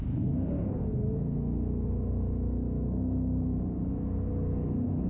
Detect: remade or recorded recorded